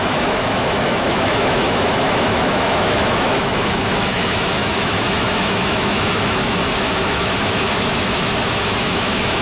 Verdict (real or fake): fake